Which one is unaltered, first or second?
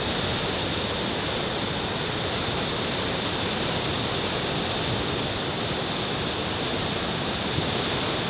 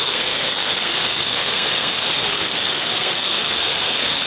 first